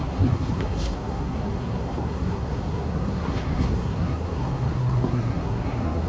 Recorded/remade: remade